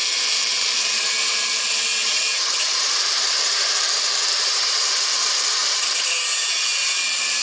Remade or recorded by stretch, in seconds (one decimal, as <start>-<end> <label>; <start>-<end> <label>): 0.0-7.4 remade